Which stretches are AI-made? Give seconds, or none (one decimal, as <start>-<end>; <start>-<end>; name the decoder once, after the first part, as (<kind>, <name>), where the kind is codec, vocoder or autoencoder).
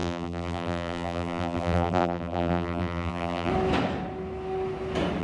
0.0-3.5 (vocoder, BigVGAN v2)